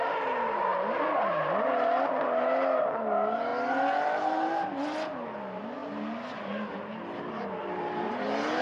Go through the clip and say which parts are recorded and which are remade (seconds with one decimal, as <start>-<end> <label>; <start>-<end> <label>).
0.0-8.6 recorded